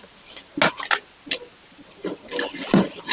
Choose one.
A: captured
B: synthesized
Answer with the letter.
A